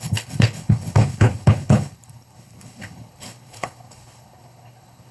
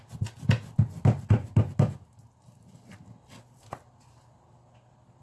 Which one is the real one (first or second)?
second